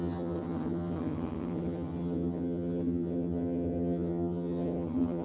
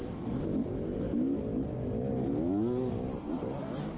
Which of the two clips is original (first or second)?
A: second